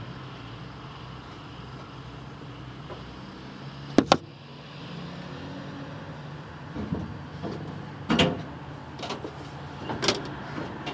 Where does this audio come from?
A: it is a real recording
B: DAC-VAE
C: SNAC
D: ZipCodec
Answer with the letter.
A